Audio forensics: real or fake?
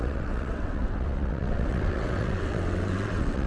fake